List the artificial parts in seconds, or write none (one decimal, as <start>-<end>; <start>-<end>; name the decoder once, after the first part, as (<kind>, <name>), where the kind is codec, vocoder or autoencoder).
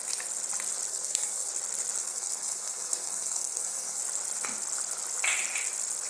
0.9-1.5 (codec, SNAC); 2.0-4.0